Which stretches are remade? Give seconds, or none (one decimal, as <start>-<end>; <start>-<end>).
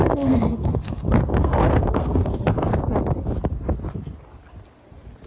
0.0-2.5